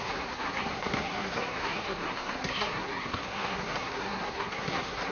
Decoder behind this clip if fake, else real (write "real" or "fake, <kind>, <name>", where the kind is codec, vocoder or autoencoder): fake, codec, SNAC